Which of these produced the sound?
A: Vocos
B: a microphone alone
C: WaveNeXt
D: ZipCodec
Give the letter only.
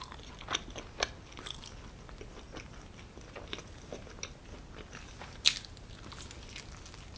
B